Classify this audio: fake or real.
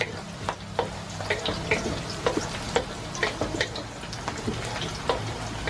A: real